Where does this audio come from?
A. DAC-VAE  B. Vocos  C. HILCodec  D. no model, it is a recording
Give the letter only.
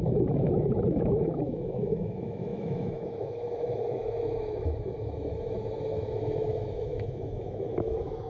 A